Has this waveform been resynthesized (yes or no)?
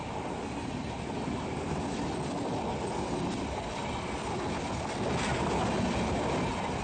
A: no